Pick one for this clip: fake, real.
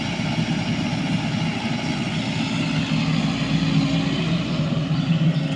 real